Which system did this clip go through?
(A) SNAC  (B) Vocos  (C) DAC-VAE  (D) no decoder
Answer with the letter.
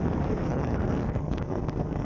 A